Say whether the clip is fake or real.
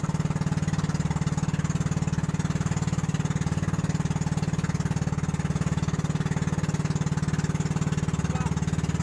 real